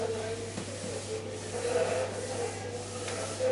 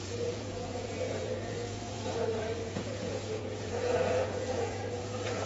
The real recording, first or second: first